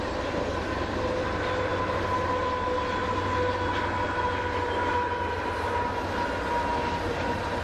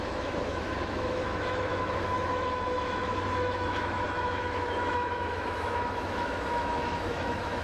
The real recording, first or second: first